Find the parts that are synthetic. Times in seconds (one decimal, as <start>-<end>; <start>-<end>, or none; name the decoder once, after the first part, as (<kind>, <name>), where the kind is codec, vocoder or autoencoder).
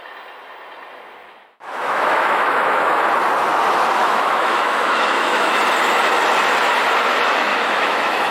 1.2-3.0 (autoencoder, DAC-VAE); 4.0-5.6; 7.5-8.3